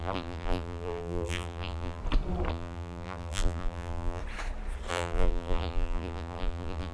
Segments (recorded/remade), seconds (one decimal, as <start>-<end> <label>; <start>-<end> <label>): 0.0-2.0 remade; 2.0-2.5 recorded; 2.5-4.2 remade; 4.2-4.9 recorded; 4.9-6.9 remade